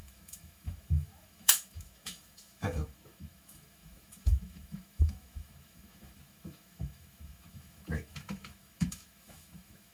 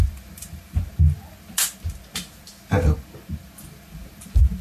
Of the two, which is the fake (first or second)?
first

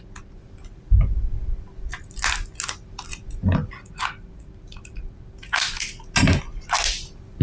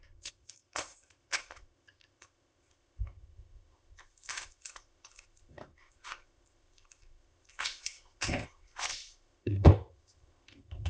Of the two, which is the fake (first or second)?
second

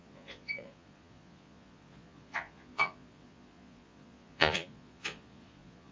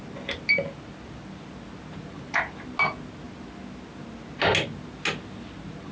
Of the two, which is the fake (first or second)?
first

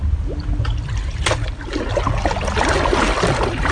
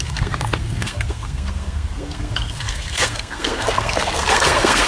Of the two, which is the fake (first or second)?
second